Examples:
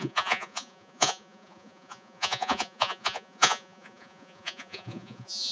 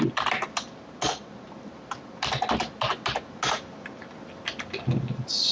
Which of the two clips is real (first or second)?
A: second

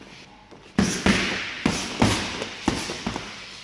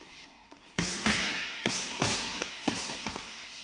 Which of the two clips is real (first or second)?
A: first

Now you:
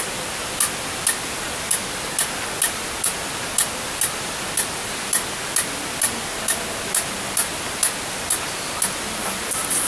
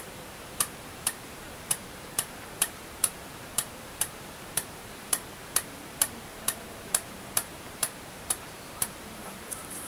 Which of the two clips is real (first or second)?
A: first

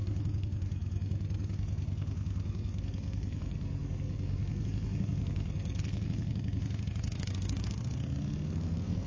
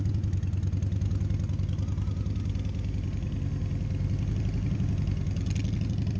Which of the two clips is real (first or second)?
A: second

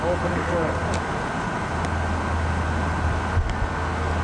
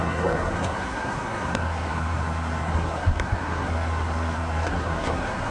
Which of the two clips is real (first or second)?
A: first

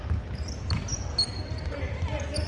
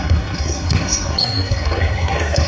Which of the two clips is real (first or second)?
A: first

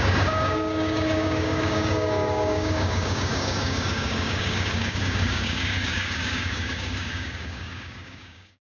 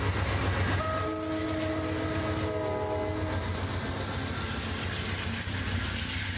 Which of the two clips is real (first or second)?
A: second